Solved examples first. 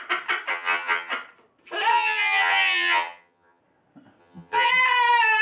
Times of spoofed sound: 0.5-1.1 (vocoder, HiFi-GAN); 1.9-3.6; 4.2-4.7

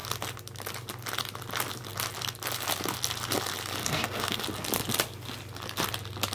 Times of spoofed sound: 3.8-4.4 (codec, SNAC)

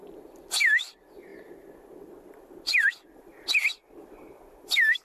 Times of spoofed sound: none